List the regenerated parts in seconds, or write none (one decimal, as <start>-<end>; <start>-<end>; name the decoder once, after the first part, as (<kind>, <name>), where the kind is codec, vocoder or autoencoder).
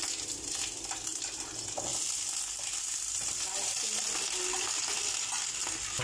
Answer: none